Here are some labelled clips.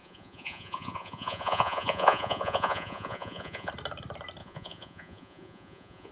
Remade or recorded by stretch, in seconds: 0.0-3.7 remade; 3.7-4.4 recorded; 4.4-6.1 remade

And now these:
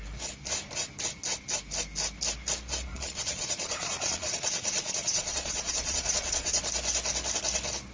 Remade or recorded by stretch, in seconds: 0.0-2.9 recorded; 2.9-6.6 remade; 6.6-7.9 recorded

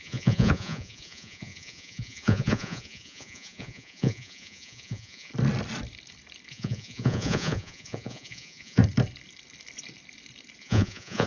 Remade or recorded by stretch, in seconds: 0.0-5.3 remade; 5.3-6.5 recorded; 6.5-8.8 remade; 8.8-10.6 recorded; 10.6-11.3 remade

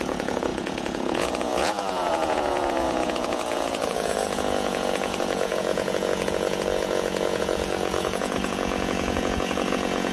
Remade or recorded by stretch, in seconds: 0.0-10.1 remade

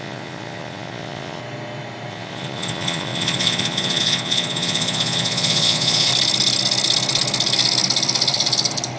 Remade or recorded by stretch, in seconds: 0.0-1.4 remade; 1.4-2.1 recorded; 2.1-6.1 remade; 6.1-9.0 recorded